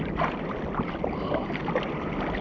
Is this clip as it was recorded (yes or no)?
yes